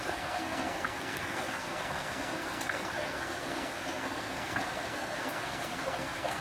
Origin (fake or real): fake